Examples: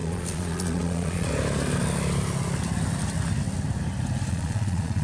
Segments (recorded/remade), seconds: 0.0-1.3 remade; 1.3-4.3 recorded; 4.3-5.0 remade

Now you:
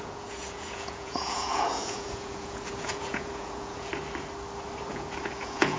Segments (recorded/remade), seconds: 0.0-3.9 remade; 3.9-4.9 recorded; 4.9-5.8 remade

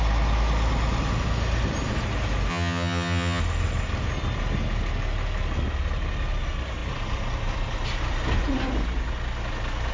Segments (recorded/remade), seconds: 0.0-2.5 recorded; 2.5-3.4 remade; 3.4-9.9 recorded

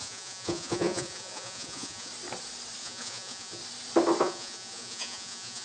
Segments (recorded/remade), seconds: 0.0-2.1 remade; 2.1-2.8 recorded; 2.8-3.6 remade; 3.6-4.2 recorded; 4.2-5.6 remade

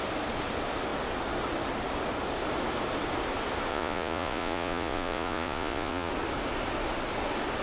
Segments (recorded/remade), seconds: 0.0-3.7 recorded; 3.7-6.1 remade; 6.1-7.6 recorded

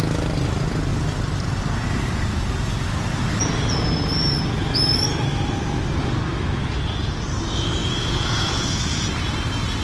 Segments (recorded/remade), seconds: 0.0-7.8 recorded; 7.8-9.1 remade; 9.1-9.8 recorded